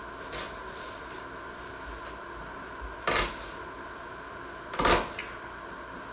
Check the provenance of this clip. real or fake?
real